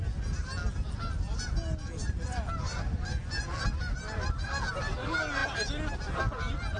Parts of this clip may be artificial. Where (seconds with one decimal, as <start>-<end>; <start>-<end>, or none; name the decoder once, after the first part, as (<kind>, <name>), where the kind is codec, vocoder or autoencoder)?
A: none

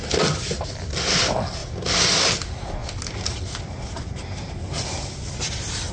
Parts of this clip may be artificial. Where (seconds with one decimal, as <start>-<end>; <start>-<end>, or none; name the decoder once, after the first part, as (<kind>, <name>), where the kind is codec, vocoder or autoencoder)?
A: none

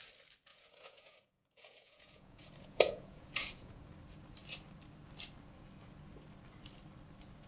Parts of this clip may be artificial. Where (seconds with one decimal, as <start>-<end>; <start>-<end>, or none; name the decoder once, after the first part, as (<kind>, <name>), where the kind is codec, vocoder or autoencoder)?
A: 0.5-3.9 (vocoder, Vocos)

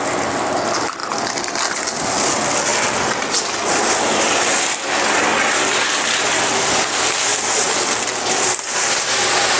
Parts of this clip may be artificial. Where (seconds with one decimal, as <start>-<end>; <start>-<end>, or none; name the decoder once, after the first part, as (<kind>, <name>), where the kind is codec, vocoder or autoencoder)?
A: none

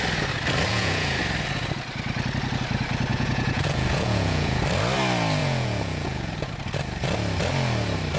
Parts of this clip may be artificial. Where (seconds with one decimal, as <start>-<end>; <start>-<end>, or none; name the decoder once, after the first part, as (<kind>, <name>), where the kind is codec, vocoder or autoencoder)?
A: 0.7-1.2 (vocoder, Vocos); 3.1-4.6; 5.4-6.5

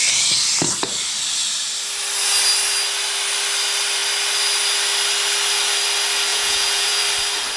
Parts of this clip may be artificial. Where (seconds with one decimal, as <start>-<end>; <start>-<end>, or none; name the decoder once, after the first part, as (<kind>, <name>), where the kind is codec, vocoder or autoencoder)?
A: 6.3-7.0 (vocoder, Vocos)

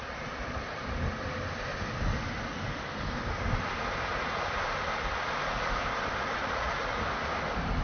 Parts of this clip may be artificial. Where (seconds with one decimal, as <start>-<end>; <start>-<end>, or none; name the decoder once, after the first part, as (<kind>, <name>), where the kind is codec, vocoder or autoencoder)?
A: 6.4-6.9 (vocoder, Vocos)

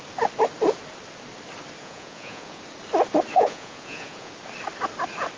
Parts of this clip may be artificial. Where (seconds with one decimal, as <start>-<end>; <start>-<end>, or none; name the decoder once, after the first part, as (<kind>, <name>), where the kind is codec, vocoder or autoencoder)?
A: 1.8-2.6 (vocoder, Vocos); 3.3-4.3